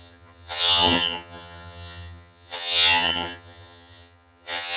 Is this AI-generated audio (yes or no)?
yes